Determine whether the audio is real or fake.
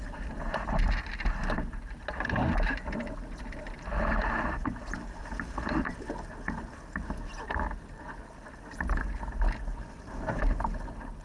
real